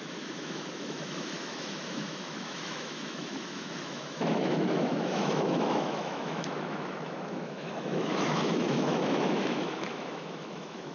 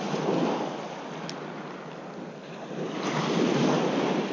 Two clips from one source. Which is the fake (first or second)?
first